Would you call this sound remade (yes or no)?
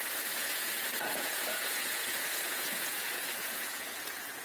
yes